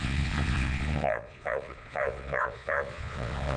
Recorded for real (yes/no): no